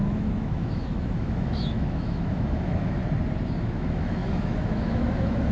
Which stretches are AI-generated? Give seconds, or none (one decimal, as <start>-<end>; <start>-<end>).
0.0-3.0; 3.6-5.5